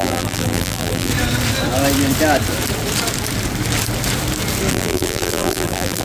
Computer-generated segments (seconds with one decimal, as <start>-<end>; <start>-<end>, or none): 0.0-1.1; 4.7-6.0